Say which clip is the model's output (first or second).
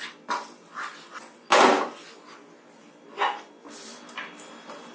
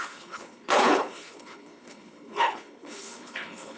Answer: second